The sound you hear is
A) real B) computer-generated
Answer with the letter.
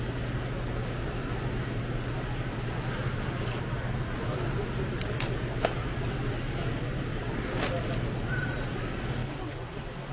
A